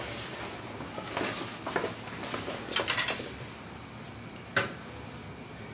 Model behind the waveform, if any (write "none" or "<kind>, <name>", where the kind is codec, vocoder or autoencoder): none